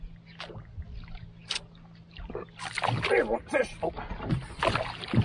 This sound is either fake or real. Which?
real